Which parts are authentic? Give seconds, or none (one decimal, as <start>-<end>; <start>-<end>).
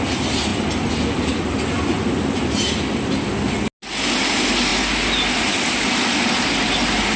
0.0-7.2